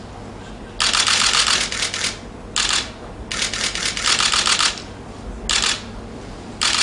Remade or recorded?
recorded